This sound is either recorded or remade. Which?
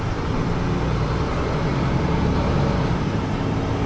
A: remade